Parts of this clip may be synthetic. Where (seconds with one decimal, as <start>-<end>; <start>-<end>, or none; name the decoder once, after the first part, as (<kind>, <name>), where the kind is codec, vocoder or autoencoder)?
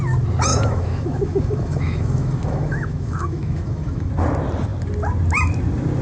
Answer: 0.5-4.1 (autoencoder, DAC-VAE)